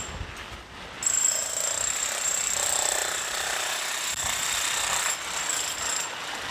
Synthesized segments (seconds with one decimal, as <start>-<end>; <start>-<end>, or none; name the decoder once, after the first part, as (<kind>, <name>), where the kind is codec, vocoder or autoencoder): none